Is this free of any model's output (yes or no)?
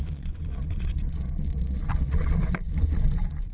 no